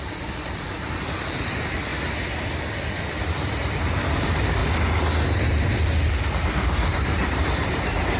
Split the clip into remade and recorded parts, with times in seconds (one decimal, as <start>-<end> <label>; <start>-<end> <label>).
0.0-1.9 remade; 1.9-3.2 recorded; 3.2-4.6 remade; 4.6-5.4 recorded; 5.4-8.2 remade